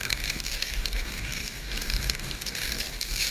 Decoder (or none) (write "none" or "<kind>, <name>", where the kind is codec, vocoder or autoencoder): codec, DAC